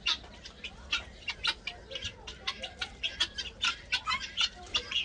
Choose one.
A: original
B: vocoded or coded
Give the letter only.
A